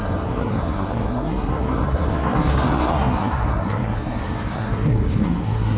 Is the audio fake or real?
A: fake